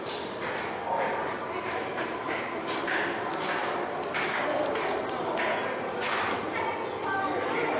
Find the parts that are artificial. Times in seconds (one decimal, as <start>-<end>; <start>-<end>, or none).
1.6-3.0